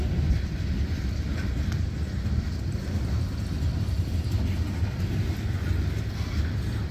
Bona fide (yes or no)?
yes